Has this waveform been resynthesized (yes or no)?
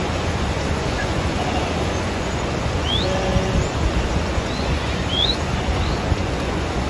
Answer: yes